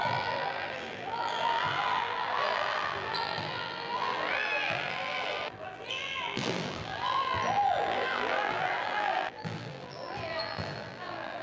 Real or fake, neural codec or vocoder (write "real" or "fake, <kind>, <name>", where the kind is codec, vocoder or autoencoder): fake, vocoder, BigVGAN v2